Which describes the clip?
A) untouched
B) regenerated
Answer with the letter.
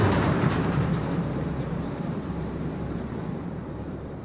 B